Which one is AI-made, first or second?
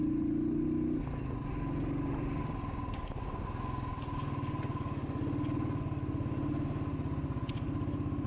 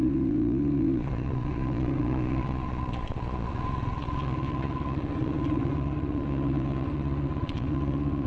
second